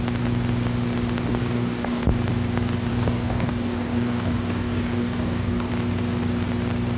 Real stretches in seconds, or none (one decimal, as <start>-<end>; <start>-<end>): 0.0-1.4; 2.0-2.9; 5.7-7.0